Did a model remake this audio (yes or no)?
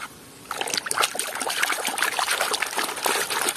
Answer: no